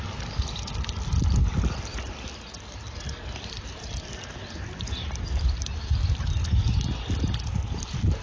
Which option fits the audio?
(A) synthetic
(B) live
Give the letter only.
B